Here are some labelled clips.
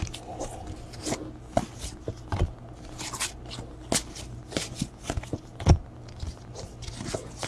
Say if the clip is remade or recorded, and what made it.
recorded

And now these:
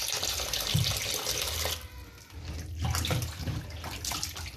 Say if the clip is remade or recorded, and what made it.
recorded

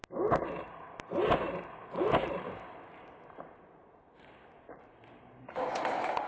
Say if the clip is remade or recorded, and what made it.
recorded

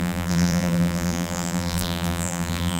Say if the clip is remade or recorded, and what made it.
remade, vocoder, BigVGAN v2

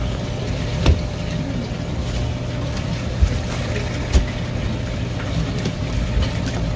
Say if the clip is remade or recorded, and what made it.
recorded